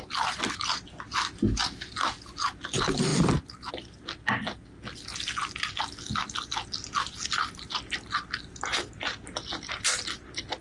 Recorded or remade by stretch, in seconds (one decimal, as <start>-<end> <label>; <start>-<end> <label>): 0.0-10.6 recorded